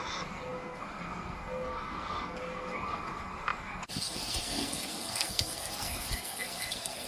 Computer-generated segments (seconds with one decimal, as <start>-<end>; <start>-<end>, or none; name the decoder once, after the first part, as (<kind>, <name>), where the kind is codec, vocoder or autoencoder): 0.0-7.1 (codec, SNAC)